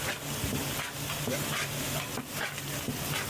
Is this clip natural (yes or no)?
yes